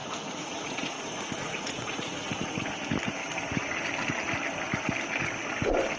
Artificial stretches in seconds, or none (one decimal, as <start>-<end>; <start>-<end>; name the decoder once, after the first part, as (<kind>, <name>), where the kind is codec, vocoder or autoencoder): 0.0-2.7 (vocoder, Vocos)